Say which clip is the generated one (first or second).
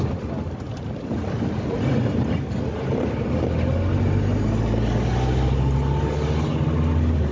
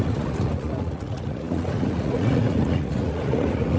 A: second